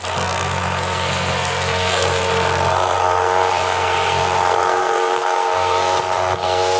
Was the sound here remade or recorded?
remade